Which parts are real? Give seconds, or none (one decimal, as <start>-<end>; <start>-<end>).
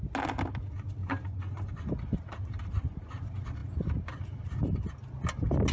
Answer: 0.0-1.0; 1.9-5.7